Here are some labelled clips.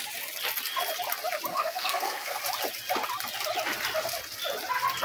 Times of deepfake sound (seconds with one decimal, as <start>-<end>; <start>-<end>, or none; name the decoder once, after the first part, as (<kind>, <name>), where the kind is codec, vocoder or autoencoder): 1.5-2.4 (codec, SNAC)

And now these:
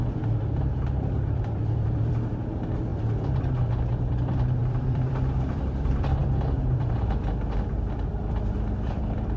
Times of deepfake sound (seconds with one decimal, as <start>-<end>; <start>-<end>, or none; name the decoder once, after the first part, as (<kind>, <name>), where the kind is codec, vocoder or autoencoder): 0.0-2.9 (vocoder, BigVGAN v2); 3.4-9.4

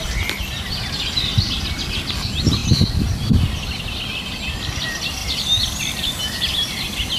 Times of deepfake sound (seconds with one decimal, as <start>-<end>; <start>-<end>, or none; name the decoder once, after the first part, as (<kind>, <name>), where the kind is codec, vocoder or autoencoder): none